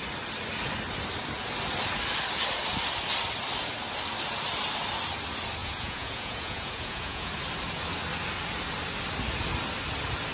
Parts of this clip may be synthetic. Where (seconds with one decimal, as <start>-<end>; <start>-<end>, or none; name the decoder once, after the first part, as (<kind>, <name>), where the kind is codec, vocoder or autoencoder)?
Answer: 5.6-7.3 (vocoder, Vocos)